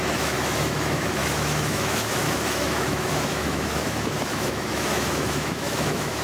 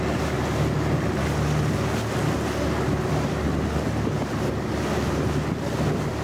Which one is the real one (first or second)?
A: second